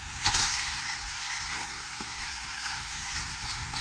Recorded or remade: remade